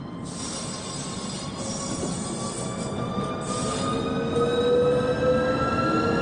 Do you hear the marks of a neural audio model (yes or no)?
no